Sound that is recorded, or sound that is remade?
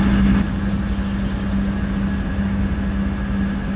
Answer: recorded